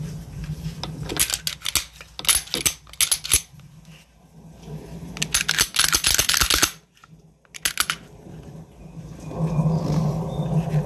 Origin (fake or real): real